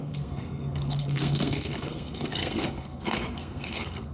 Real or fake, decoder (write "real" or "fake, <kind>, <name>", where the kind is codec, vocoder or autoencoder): fake, codec, SNAC